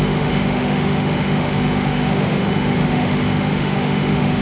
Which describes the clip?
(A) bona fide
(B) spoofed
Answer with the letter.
B